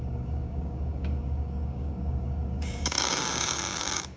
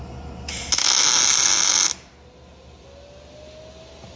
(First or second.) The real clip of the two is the second